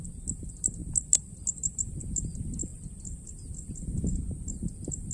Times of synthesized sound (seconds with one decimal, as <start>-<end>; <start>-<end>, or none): none